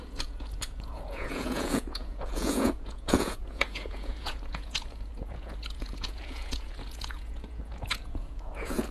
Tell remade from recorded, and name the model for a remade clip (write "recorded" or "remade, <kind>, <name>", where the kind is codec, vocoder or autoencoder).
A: remade, vocoder, Vocos